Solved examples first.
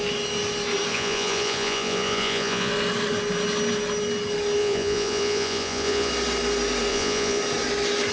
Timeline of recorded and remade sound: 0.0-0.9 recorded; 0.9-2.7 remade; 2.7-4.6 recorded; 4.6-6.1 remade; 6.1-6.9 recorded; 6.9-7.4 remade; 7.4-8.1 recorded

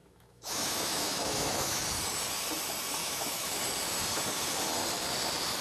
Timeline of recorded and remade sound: 0.0-1.8 remade; 1.8-3.0 recorded; 3.0-3.6 remade; 3.6-5.6 recorded